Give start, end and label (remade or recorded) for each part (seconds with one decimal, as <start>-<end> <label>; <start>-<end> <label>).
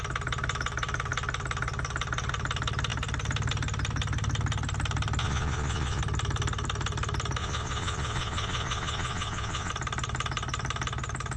0.0-5.2 recorded; 5.2-6.0 remade; 6.0-7.4 recorded; 7.4-9.7 remade; 9.7-11.4 recorded